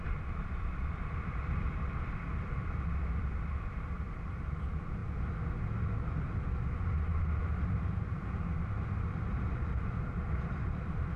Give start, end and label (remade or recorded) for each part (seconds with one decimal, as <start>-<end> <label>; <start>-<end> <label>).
0.0-5.0 remade; 5.0-8.9 recorded; 8.9-11.2 remade